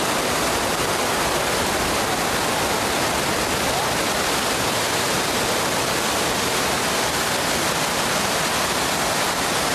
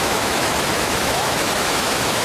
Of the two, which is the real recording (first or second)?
first